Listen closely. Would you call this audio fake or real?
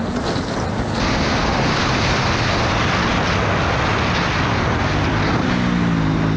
real